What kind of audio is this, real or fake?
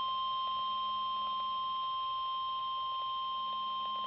real